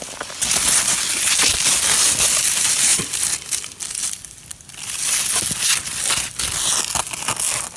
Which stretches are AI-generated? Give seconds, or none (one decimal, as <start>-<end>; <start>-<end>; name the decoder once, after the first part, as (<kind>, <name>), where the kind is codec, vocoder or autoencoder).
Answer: 2.9-4.4 (vocoder, BigVGAN v2)